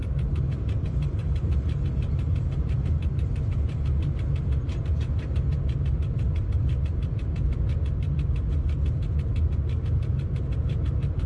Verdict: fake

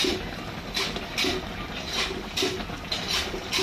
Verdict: real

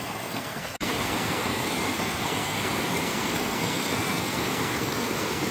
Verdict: fake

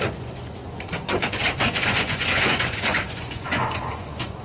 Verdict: fake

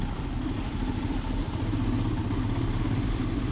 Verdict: real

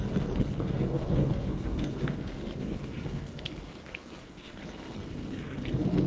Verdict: fake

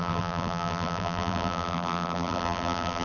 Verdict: fake